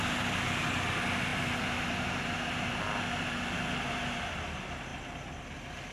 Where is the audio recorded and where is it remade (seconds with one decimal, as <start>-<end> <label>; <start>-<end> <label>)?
0.0-5.9 recorded